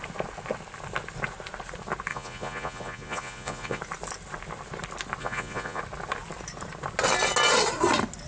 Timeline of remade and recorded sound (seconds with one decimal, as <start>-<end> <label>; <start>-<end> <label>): 0.0-2.1 recorded; 2.1-3.8 remade; 3.8-5.2 recorded; 5.2-5.8 remade; 5.8-8.3 recorded

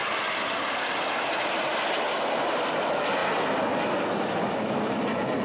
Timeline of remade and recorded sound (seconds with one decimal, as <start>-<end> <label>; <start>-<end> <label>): 0.0-5.4 recorded

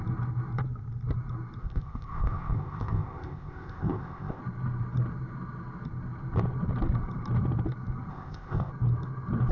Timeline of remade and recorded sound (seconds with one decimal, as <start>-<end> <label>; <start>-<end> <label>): 0.0-1.6 recorded; 1.6-4.4 remade; 4.4-8.1 recorded; 8.1-8.7 remade; 8.7-9.5 recorded

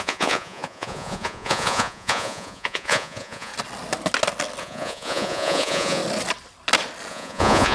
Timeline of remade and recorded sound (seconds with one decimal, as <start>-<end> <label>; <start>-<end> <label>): 0.0-3.5 remade; 3.5-4.6 recorded; 4.6-6.0 remade; 6.0-7.1 recorded; 7.1-7.7 remade

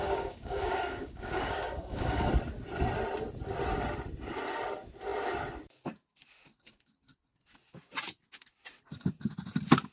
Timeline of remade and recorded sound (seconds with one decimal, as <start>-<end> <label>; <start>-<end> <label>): 0.0-2.3 remade; 2.3-9.9 recorded